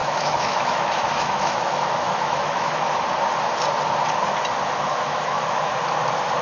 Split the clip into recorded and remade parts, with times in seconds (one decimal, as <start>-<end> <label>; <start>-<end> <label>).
0.0-3.0 remade; 3.0-4.9 recorded; 4.9-5.6 remade; 5.6-6.4 recorded